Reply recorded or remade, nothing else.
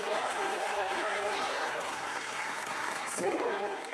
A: remade